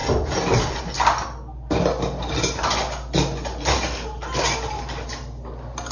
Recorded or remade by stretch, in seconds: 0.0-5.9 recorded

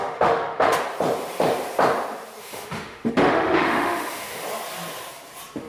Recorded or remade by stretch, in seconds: 0.0-0.8 remade; 0.8-2.4 recorded; 2.4-4.4 remade; 4.4-5.7 recorded

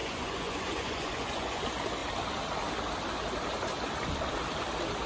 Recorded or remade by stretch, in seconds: 0.0-1.6 remade; 1.6-5.1 recorded

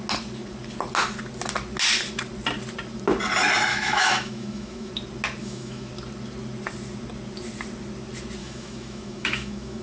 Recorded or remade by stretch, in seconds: 0.0-3.7 recorded; 3.7-4.9 remade; 4.9-5.4 recorded; 5.4-5.9 remade; 5.9-8.4 recorded; 8.4-9.8 remade

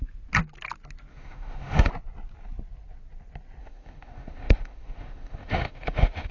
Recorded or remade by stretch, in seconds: 0.0-1.1 recorded; 1.1-1.9 remade; 1.9-3.6 recorded; 3.6-6.3 remade

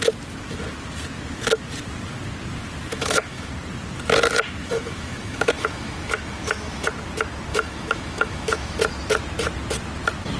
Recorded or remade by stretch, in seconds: 0.0-2.9 recorded; 2.9-3.5 remade; 3.5-4.6 recorded; 4.6-6.9 remade; 6.9-7.5 recorded; 7.5-8.8 remade; 8.8-10.4 recorded